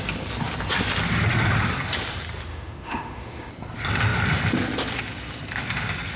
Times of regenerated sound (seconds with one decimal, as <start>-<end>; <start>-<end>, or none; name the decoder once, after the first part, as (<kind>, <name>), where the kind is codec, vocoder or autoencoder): 2.5-3.5 (autoencoder, DAC-VAE)